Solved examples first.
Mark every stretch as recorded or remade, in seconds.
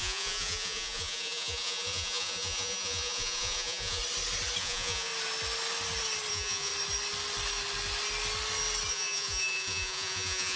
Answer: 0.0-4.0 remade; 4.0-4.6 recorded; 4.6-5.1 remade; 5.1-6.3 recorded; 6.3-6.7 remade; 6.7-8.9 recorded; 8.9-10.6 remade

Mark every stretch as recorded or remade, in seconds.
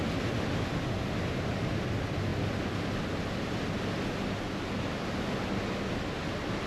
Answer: 0.0-6.7 recorded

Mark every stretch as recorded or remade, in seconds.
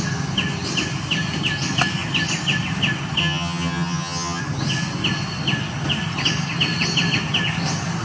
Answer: 0.0-3.2 recorded; 3.2-4.4 remade; 4.4-8.0 recorded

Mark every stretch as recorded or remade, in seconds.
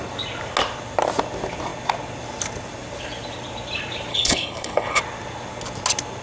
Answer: 0.0-4.1 recorded; 4.1-5.0 remade; 5.0-6.2 recorded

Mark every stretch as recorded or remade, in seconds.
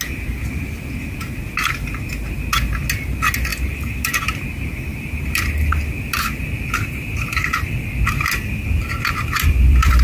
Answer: 0.0-3.5 recorded; 3.5-4.2 remade; 4.2-4.9 recorded; 4.9-10.0 remade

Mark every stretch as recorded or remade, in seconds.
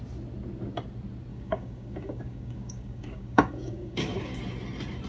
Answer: 0.0-1.3 recorded; 1.3-4.4 remade; 4.4-5.1 recorded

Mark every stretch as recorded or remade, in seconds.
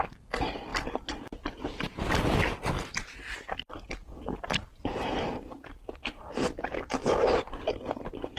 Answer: 0.0-0.7 recorded; 0.7-2.0 remade; 2.0-4.0 recorded; 4.0-6.3 remade; 6.3-8.4 recorded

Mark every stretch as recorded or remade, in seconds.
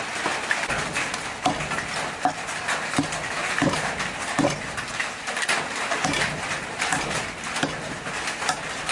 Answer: 0.0-3.4 recorded; 3.4-8.0 remade; 8.0-8.9 recorded